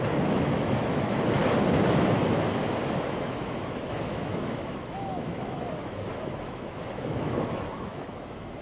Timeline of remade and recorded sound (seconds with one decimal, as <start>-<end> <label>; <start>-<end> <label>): 0.0-1.4 remade; 1.4-3.1 recorded; 3.1-8.6 remade